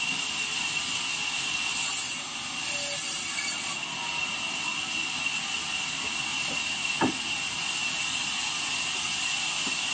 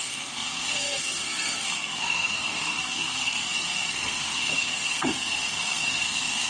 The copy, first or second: second